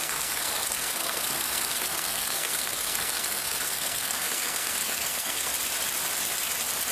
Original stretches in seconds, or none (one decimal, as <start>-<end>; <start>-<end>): 5.5-6.9